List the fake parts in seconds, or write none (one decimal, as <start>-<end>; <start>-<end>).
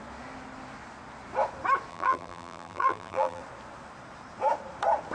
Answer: 1.9-3.4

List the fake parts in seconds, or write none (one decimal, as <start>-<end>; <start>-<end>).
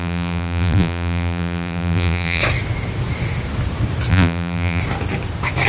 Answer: 0.0-2.4; 4.1-4.8